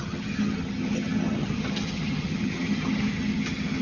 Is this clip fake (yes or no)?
yes